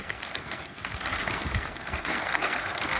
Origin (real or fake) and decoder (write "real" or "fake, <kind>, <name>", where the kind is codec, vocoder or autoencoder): fake, codec, SNAC